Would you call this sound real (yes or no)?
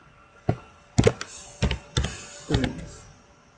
yes